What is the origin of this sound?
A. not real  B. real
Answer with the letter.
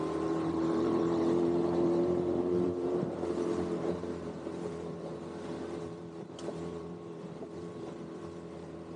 A